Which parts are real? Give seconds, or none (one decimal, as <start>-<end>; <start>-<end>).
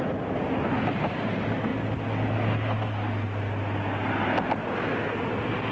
0.0-5.7